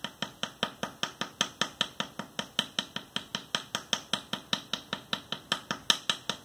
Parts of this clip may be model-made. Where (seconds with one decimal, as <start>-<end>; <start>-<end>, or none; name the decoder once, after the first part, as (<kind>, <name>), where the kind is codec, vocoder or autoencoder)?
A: none